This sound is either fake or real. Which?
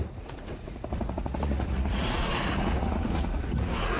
fake